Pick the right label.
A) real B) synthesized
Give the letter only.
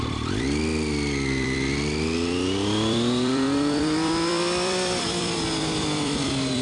B